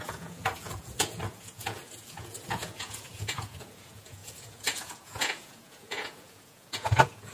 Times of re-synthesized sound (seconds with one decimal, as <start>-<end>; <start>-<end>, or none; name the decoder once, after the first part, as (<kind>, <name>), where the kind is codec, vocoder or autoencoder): 0.0-7.3 (vocoder, Vocos)